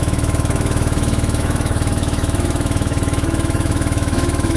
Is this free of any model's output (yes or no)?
no